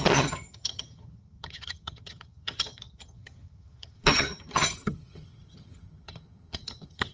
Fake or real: fake